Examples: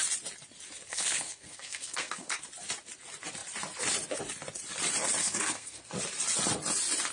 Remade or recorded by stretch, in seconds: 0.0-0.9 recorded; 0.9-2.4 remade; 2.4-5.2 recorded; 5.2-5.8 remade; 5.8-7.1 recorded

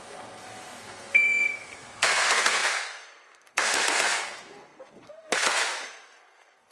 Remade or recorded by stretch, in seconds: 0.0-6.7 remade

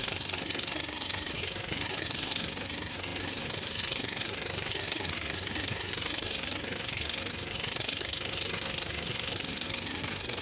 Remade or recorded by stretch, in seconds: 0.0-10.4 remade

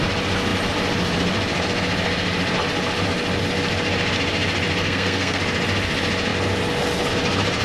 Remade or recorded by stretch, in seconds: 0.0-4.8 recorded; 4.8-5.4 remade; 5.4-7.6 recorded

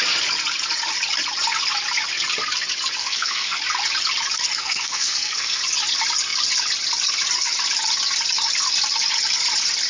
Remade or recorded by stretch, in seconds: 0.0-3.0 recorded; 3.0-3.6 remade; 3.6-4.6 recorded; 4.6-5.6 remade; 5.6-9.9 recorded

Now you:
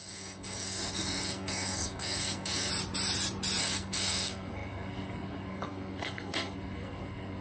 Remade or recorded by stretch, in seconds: 0.0-2.7 remade; 2.7-3.6 recorded; 3.6-7.4 remade